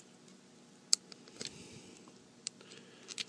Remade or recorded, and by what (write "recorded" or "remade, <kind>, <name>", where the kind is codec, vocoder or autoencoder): recorded